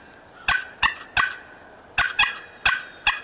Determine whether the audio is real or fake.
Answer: real